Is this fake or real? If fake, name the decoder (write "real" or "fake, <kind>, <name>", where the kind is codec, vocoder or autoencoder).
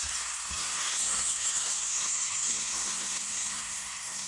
fake, codec, SNAC